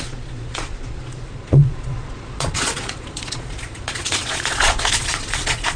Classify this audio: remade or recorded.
remade